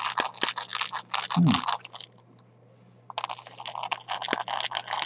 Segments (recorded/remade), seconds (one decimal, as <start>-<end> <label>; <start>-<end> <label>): 0.0-5.1 recorded